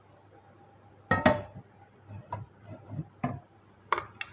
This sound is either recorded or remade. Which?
recorded